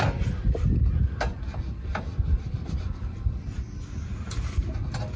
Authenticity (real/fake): real